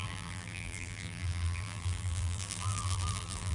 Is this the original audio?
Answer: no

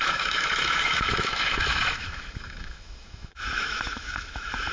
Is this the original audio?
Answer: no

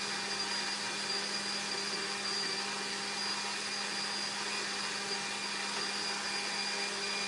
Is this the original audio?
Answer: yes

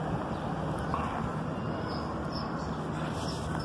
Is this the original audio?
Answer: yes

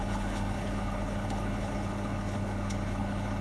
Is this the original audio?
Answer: no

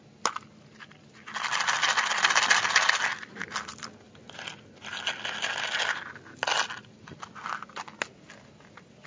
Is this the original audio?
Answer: yes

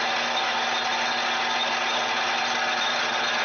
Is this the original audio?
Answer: yes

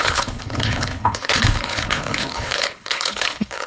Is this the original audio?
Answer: no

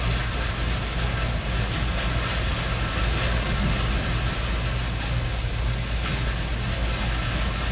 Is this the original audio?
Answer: yes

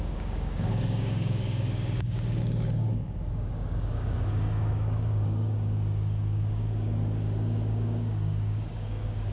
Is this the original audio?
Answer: no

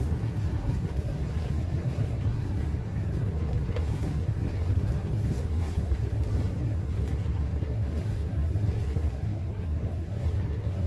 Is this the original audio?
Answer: no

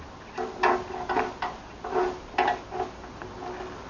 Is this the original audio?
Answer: yes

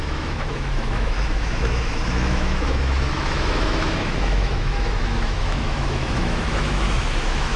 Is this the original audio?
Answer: no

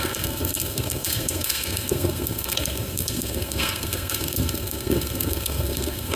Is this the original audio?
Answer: no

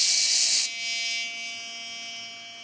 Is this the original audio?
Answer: yes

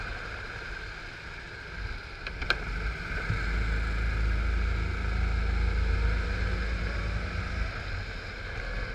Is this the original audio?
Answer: yes